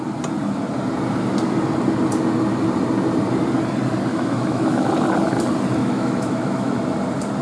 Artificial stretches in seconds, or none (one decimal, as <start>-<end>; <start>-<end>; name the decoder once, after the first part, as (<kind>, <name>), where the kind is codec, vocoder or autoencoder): 4.1-4.9 (autoencoder, DAC-VAE); 5.8-6.7